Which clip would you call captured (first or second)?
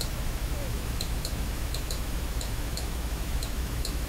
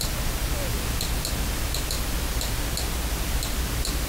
second